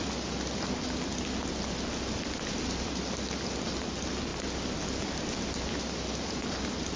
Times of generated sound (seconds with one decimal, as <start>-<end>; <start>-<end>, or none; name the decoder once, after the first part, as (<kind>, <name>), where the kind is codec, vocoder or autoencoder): none